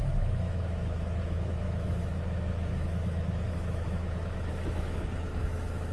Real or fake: fake